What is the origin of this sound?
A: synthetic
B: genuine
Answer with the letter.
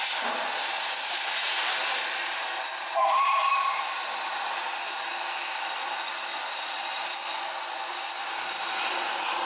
B